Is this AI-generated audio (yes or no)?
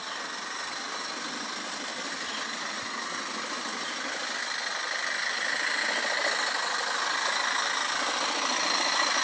no